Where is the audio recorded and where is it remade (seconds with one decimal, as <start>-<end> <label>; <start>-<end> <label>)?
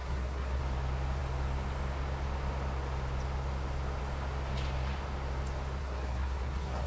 0.0-0.6 remade; 0.6-5.8 recorded; 5.8-6.9 remade